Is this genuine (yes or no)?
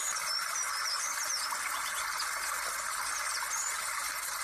yes